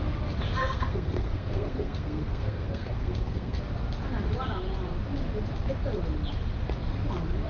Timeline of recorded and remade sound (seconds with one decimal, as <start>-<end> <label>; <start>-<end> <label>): 0.0-0.6 recorded; 0.6-3.6 remade; 3.6-7.5 recorded